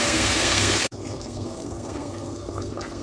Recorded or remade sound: remade